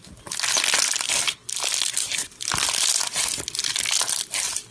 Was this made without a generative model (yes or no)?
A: yes